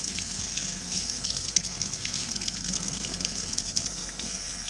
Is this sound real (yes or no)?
no